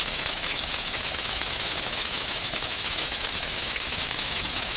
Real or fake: fake